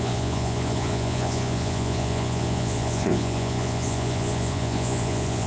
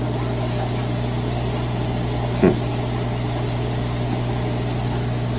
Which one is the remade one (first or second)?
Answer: first